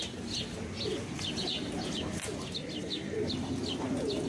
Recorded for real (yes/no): yes